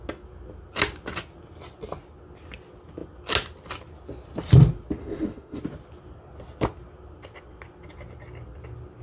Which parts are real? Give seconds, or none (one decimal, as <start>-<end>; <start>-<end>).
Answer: 0.0-5.0; 5.6-9.0